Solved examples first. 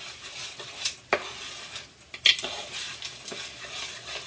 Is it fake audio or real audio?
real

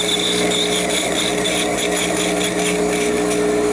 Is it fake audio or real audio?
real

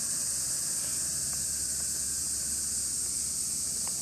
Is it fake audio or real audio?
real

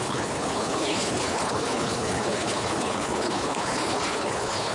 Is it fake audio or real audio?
fake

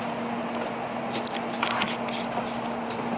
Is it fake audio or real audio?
real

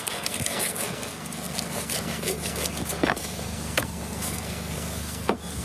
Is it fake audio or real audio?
fake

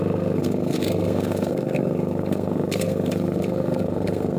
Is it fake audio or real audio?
fake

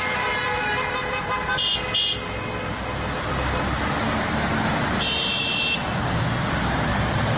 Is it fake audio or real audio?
real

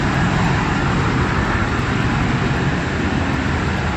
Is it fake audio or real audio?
fake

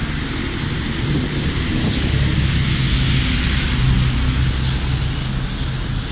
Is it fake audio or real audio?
real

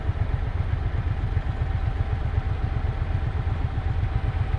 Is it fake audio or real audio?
real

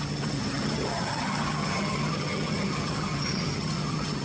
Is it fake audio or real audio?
fake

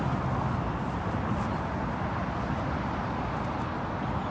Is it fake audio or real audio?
real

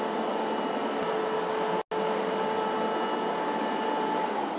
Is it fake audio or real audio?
real